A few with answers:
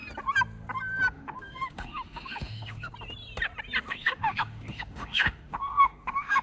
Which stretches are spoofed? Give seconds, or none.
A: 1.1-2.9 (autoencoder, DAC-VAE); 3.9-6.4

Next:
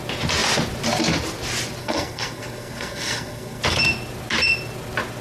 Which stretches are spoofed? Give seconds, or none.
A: 1.8-3.6 (codec, SNAC)